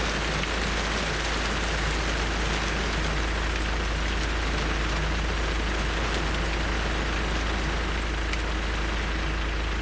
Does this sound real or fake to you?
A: real